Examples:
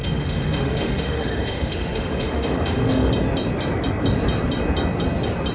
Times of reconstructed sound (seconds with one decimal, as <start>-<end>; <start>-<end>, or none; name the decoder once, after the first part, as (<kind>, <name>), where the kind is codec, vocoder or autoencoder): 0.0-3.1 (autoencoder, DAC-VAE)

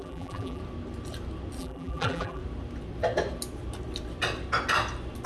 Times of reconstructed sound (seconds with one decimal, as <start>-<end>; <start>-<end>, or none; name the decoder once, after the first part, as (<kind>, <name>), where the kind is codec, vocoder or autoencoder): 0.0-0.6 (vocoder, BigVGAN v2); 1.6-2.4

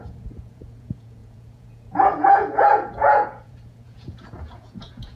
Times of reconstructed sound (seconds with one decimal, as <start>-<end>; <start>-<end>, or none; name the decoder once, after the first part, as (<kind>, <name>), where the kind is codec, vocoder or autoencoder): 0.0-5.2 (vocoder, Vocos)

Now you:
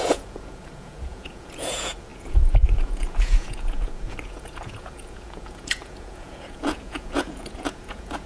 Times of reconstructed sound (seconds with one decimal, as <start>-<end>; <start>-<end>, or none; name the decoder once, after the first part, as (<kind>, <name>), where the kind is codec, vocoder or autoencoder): 0.0-8.3 (vocoder, Vocos)